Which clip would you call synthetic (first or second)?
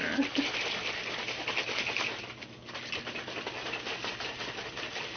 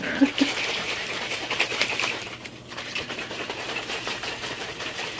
second